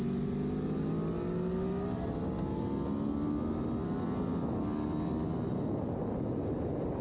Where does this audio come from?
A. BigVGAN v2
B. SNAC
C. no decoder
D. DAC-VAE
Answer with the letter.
C